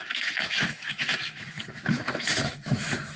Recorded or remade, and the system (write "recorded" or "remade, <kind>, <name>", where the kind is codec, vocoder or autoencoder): remade, autoencoder, DAC-VAE